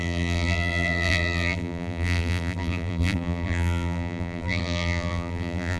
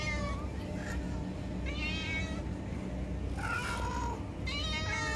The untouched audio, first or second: second